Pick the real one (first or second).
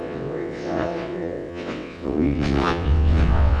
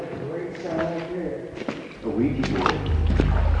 second